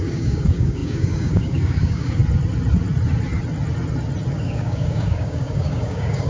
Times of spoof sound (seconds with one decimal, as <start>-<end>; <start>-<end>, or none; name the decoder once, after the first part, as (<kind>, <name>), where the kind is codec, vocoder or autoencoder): 0.0-2.2 (codec, DAC); 4.3-6.3

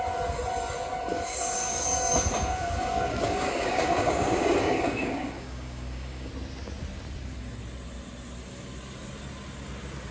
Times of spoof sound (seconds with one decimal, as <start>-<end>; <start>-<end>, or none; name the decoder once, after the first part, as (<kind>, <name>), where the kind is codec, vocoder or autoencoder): 1.1-6.3 (codec, DAC)